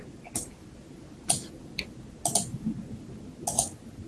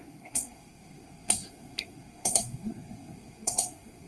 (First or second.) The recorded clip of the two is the first